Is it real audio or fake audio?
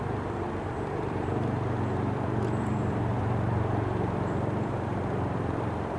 fake